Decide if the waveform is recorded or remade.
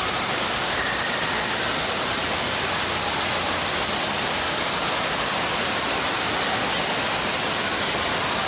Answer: recorded